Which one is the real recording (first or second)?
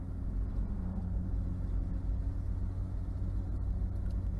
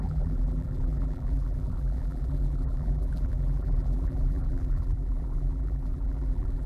first